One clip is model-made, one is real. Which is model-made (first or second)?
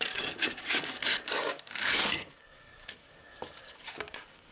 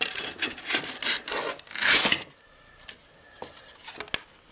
first